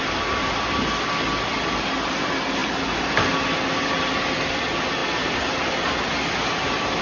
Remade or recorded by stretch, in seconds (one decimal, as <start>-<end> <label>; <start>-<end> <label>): 0.0-7.0 recorded